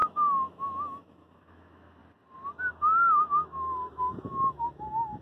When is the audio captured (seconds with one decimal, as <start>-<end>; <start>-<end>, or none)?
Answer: 2.0-2.7

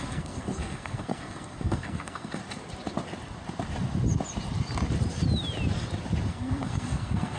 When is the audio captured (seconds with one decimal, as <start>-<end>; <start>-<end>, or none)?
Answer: 2.4-6.3

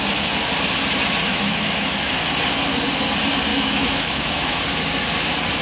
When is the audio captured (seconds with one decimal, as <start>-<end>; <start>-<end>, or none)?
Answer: 0.0-1.3; 2.3-3.5; 4.6-5.6